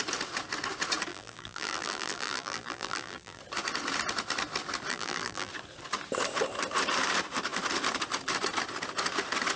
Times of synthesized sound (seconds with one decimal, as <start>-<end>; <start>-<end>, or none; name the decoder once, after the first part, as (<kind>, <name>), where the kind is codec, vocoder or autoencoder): 1.1-3.4 (vocoder, BigVGAN v2); 4.9-5.5